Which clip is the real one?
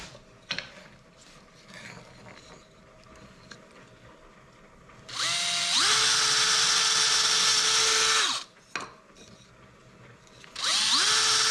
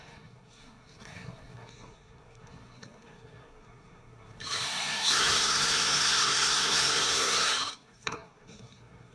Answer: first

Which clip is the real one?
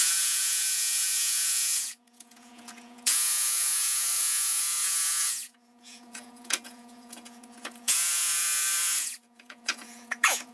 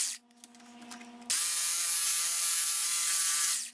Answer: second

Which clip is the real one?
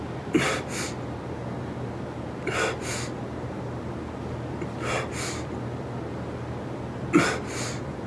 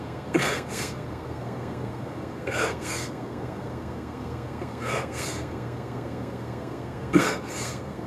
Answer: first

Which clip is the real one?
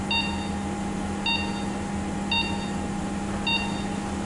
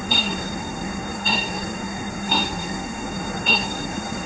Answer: first